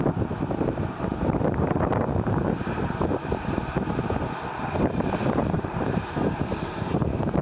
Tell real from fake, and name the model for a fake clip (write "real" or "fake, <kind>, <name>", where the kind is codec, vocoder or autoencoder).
fake, vocoder, BigVGAN v2